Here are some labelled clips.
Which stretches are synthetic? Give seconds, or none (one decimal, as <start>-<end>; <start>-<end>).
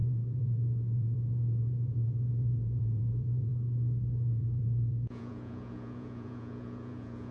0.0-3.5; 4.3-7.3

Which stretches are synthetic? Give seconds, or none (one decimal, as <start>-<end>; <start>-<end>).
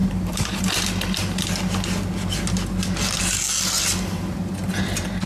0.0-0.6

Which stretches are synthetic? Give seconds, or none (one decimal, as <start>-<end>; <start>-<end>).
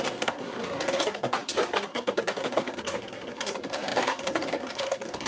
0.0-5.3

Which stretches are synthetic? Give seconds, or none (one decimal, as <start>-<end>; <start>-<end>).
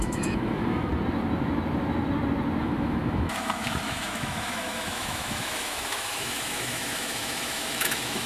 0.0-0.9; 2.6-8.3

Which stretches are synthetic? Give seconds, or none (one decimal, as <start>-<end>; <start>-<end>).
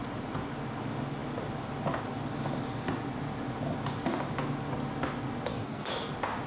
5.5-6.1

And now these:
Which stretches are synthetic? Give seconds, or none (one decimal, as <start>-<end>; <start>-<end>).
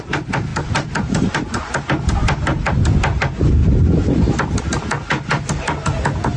none